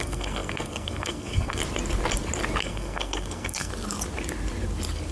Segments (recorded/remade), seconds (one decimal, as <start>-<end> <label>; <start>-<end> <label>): 0.0-1.6 remade; 1.6-2.6 recorded; 2.6-3.7 remade; 3.7-5.1 recorded